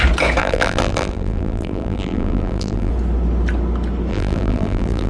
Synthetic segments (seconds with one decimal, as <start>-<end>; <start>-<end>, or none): 0.4-2.9; 4.1-5.1